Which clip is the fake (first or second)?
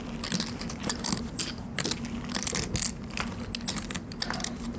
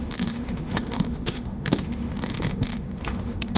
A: second